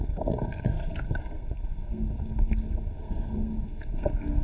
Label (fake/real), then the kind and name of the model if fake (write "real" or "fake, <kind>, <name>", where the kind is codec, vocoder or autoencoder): fake, codec, SNAC